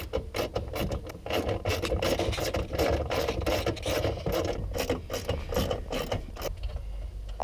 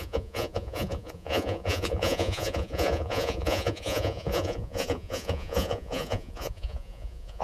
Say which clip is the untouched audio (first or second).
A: first